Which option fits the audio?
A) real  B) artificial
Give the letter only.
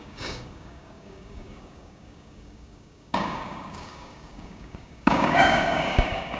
B